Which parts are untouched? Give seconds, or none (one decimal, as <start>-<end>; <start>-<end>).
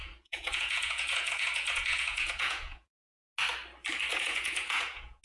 3.1-4.1